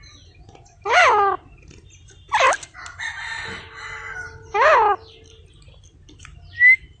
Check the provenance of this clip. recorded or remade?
recorded